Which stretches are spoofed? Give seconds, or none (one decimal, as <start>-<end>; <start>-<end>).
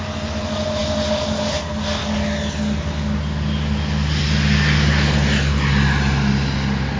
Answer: none